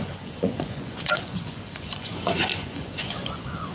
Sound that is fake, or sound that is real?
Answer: fake